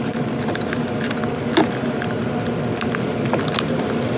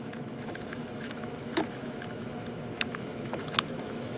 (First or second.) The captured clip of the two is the first